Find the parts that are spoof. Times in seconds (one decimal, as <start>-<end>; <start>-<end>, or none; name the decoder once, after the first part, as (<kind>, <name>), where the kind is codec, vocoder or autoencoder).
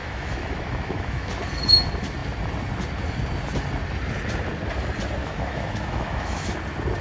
0.0-1.3 (autoencoder, DAC-VAE); 5.2-6.5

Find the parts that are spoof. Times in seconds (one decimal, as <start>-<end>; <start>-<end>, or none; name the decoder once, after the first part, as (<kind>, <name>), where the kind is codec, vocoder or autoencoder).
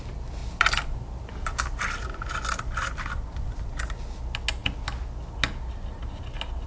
0.4-4.0 (vocoder, BigVGAN v2)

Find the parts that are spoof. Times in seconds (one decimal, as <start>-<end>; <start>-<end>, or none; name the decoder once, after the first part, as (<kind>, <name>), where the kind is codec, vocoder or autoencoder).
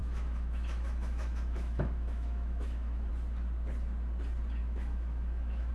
0.0-3.1 (autoencoder, DAC-VAE); 4.6-5.7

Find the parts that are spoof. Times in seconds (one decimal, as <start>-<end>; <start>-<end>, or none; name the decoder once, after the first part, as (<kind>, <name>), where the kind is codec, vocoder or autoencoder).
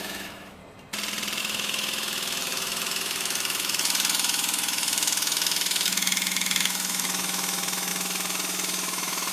0.0-0.6 (autoencoder, DAC-VAE); 1.4-9.3